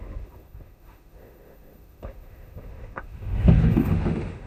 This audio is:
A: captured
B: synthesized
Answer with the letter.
B